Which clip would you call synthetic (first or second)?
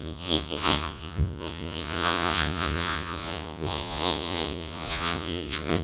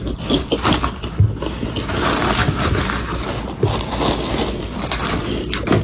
first